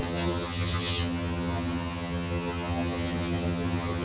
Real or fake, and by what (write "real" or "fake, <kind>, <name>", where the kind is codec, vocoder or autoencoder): fake, vocoder, HiFi-GAN